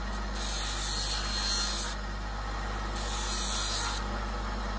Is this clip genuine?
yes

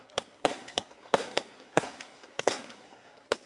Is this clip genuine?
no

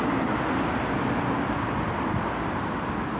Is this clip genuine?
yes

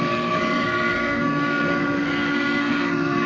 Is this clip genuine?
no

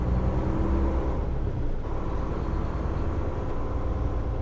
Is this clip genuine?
yes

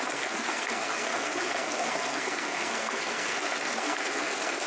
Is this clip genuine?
no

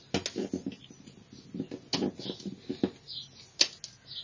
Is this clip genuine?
yes